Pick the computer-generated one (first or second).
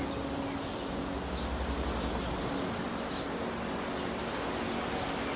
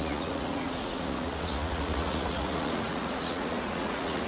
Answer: second